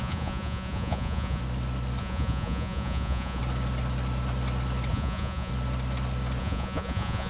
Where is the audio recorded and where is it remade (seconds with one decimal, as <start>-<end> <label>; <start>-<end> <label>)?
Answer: 0.0-1.4 remade; 1.4-2.0 recorded; 2.0-3.4 remade; 3.4-4.9 recorded; 4.9-5.5 remade; 5.5-6.4 recorded; 6.4-7.3 remade